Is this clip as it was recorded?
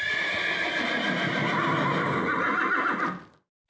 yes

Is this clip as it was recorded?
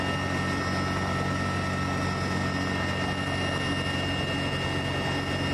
yes